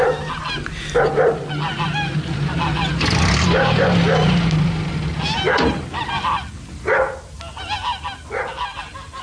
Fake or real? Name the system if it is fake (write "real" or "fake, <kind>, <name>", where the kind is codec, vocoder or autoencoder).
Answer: real